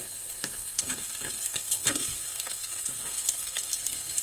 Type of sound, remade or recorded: remade